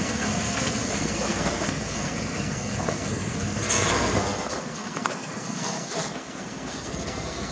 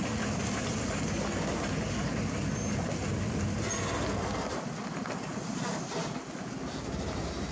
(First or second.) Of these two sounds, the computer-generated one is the first